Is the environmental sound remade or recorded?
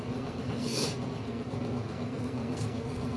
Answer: remade